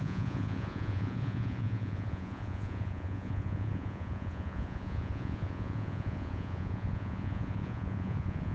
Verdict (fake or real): fake